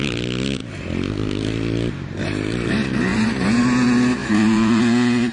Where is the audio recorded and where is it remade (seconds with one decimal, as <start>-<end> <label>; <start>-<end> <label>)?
0.0-3.1 recorded; 3.1-3.6 remade; 3.6-4.2 recorded; 4.2-4.8 remade; 4.8-5.3 recorded

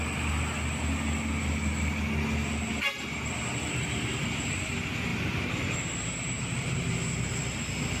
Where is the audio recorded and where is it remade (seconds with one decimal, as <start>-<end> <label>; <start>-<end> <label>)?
0.0-5.1 recorded; 5.1-6.8 remade; 6.8-8.0 recorded